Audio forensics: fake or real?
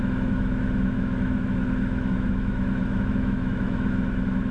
fake